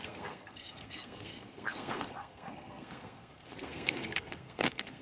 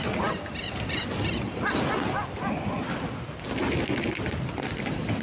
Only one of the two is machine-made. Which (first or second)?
first